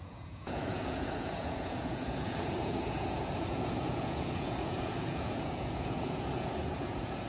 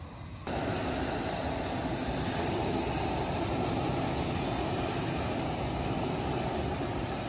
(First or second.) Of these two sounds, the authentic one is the second